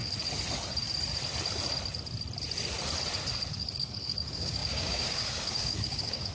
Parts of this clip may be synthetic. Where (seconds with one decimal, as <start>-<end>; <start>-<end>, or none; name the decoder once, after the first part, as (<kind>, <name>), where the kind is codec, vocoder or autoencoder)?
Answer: 3.5-6.3 (codec, DAC)